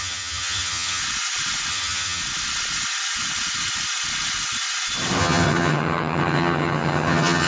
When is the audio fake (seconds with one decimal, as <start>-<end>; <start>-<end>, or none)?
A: 0.0-1.0; 1.7-2.2; 5.2-7.5